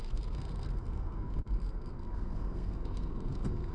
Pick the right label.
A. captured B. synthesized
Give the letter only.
B